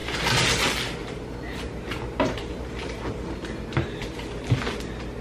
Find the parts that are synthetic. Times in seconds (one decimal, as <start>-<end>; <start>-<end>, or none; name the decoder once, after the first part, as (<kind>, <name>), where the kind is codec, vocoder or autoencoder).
0.0-0.6 (vocoder, BigVGAN v2); 1.0-4.1